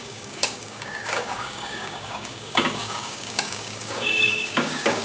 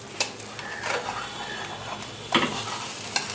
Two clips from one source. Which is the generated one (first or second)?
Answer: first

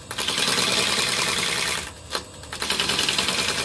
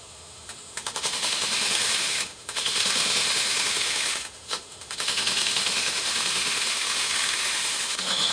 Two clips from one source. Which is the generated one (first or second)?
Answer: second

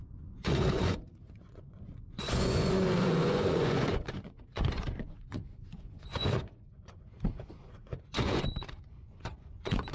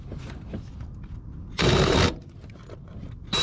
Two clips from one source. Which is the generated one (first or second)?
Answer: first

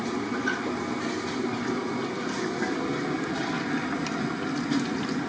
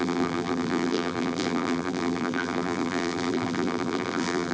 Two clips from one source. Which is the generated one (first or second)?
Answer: second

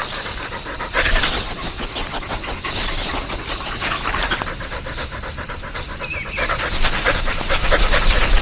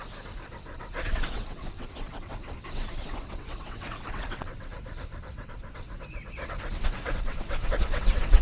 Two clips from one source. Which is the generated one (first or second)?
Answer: second